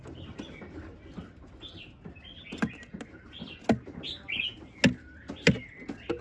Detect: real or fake real